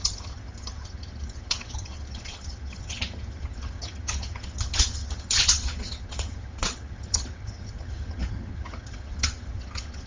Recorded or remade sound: remade